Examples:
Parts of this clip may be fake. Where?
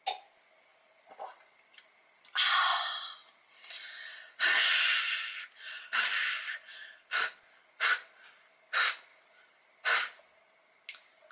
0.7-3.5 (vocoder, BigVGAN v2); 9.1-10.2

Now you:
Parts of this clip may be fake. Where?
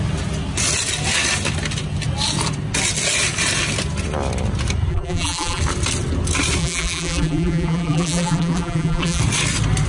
4.9-5.6 (vocoder, BigVGAN v2); 6.6-9.2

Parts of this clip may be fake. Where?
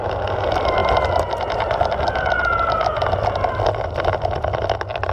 none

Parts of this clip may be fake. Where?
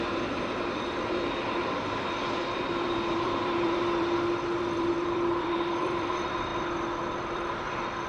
0.0-8.1 (vocoder, BigVGAN v2)